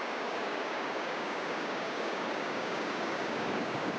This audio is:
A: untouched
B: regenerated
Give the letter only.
B